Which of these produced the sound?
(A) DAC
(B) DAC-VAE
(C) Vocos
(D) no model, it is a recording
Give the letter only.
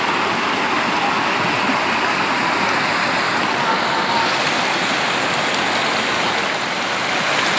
D